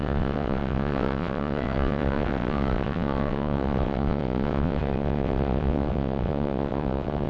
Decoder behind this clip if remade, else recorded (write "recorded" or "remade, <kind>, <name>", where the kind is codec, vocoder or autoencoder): remade, vocoder, WaveNeXt